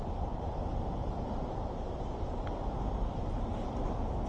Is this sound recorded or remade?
recorded